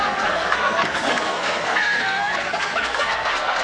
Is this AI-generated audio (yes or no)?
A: yes